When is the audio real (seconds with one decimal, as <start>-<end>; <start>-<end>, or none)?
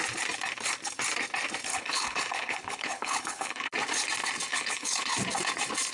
0.0-1.7; 3.7-4.5; 5.1-5.9